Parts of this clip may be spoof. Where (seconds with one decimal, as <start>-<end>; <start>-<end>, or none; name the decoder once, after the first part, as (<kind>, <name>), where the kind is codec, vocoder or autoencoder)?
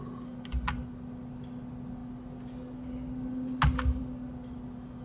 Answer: none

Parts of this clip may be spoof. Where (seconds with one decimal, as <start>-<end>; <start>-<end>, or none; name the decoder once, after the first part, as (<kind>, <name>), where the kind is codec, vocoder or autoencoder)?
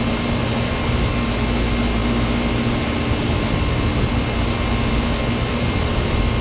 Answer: none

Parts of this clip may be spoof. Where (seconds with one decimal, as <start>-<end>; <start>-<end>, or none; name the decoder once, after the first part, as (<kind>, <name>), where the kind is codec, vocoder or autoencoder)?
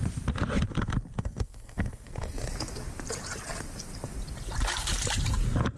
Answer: 1.1-2.4 (codec, SNAC)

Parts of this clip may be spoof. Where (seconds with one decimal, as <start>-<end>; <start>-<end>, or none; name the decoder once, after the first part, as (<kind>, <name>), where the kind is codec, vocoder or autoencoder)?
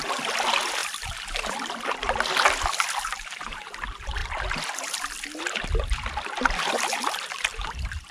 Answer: none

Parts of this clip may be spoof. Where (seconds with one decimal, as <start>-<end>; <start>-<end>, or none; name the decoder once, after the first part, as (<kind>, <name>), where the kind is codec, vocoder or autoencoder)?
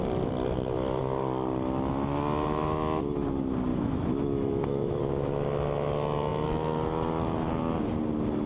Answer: 3.7-5.0 (autoencoder, DAC-VAE)